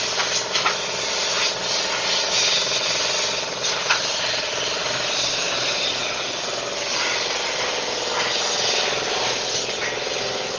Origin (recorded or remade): recorded